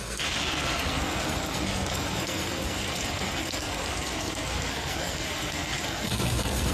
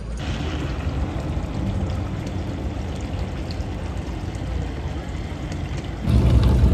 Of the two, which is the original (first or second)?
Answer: second